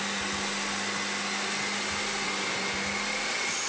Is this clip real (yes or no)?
yes